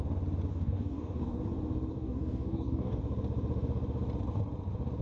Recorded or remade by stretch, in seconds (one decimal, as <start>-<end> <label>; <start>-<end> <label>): 0.0-0.5 recorded; 0.5-1.4 remade; 1.4-1.9 recorded; 1.9-3.0 remade; 3.0-5.0 recorded